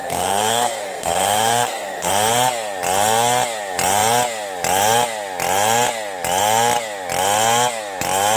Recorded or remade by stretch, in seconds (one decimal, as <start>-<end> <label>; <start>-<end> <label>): 0.0-2.1 remade; 2.1-8.4 recorded

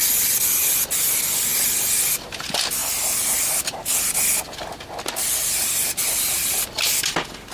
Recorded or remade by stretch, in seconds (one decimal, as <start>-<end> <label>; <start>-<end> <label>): 0.0-7.5 recorded

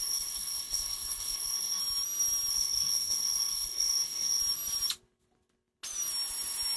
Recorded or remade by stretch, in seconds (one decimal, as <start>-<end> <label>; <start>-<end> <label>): 0.0-1.8 remade; 1.8-2.5 recorded; 2.5-4.4 remade; 4.4-6.8 recorded

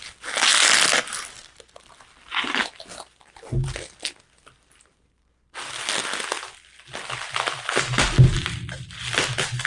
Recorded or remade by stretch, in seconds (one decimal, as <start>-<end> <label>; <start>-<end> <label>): 0.0-9.7 recorded

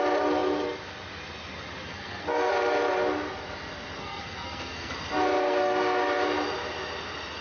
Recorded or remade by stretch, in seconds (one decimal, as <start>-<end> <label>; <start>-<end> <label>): 0.0-1.9 recorded; 1.9-2.5 remade; 2.5-4.0 recorded; 4.0-4.9 remade; 4.9-5.4 recorded; 5.4-6.0 remade; 6.0-7.4 recorded

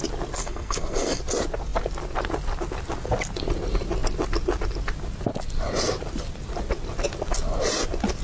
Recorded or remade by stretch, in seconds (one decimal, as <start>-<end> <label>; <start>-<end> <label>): 0.0-0.4 recorded; 0.4-1.2 remade; 1.2-8.2 recorded